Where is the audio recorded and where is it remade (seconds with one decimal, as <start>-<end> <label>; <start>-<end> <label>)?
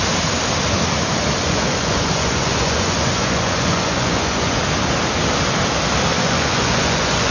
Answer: 0.0-1.4 recorded; 1.4-4.6 remade; 4.6-6.1 recorded; 6.1-7.3 remade